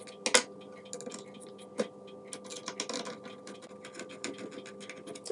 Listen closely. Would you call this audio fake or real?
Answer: real